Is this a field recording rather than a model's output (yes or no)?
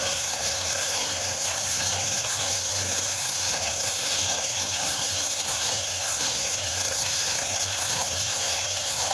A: no